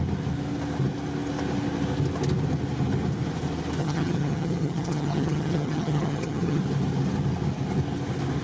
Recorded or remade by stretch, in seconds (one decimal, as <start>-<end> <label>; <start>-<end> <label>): 0.0-3.8 recorded; 3.8-6.6 remade; 6.6-8.4 recorded